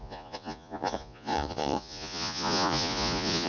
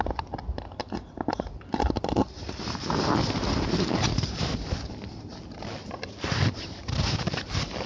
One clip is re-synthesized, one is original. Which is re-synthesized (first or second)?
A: first